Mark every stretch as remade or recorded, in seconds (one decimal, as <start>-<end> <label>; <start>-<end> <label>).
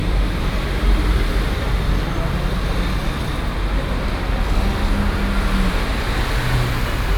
0.0-1.9 remade; 1.9-7.2 recorded